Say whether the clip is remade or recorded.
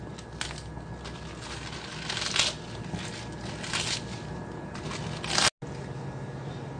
recorded